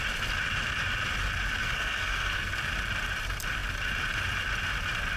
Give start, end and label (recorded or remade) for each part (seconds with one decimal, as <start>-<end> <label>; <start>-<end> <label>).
0.0-1.6 recorded; 1.6-2.5 remade; 2.5-5.2 recorded